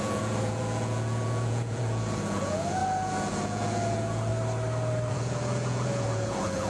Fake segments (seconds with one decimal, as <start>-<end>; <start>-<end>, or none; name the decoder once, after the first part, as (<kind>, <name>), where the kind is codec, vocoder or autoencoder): 0.0-4.3 (vocoder, Vocos); 5.1-6.7